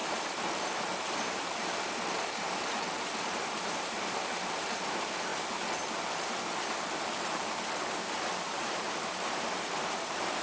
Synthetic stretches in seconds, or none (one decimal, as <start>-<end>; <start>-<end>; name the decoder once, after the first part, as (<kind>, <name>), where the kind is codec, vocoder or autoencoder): 0.0-5.3 (vocoder, BigVGAN v2); 8.4-10.4